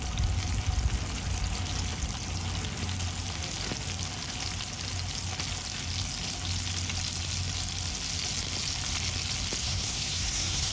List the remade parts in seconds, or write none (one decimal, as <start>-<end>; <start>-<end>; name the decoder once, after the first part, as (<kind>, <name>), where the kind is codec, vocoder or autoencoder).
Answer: 9.6-10.7 (codec, SNAC)